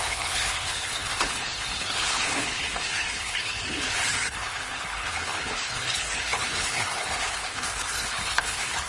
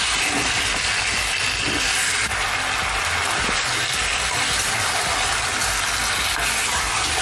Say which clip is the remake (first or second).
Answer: first